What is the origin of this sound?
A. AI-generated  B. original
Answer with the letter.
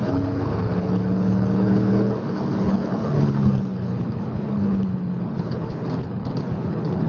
A